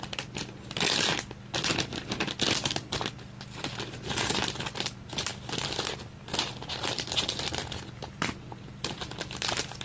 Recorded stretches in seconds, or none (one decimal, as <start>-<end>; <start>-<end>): 0.0-9.8